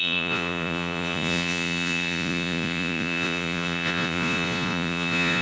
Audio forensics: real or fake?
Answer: fake